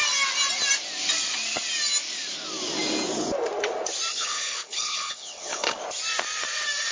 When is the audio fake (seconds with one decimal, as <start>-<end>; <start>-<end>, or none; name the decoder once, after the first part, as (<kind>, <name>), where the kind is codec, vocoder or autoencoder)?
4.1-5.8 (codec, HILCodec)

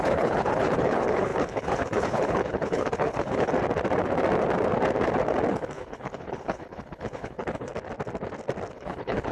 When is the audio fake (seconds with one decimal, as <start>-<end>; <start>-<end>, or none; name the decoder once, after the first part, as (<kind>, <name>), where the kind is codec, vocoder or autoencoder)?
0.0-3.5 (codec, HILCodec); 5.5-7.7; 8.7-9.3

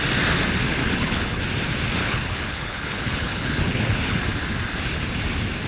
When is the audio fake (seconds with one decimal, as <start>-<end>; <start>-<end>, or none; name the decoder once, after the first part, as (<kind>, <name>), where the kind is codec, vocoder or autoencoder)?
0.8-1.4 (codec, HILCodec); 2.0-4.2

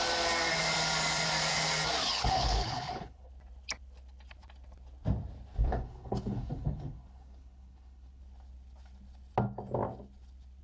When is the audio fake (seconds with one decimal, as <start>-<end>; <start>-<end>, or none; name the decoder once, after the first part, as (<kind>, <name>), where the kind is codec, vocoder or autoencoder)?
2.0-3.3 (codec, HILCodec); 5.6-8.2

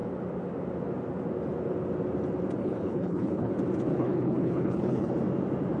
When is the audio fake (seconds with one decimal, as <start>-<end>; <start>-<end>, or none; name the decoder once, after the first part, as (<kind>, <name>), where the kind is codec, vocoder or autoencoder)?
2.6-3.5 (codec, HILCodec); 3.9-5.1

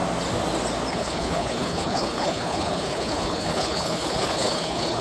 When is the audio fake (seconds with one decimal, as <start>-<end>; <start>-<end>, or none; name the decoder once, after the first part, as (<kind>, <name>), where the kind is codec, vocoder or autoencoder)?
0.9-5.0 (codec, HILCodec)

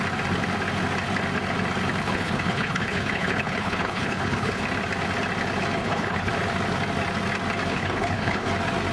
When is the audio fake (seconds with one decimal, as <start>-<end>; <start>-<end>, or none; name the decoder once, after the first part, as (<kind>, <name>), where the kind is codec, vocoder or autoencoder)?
2.0-4.6 (codec, HILCodec); 5.8-6.3; 7.7-8.5